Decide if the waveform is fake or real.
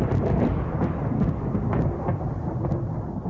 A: fake